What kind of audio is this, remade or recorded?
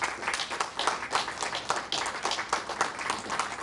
recorded